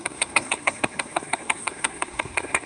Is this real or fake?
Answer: fake